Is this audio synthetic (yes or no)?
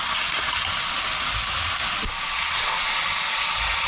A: no